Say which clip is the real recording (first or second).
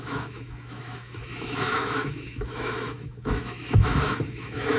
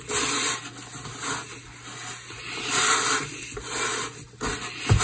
second